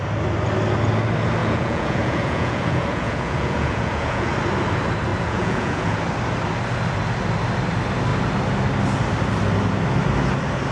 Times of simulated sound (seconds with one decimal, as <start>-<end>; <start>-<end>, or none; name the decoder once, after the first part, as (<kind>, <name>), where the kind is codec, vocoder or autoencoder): 1.4-4.3 (vocoder, Vocos); 5.1-6.0